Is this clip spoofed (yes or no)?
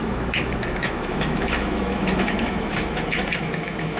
yes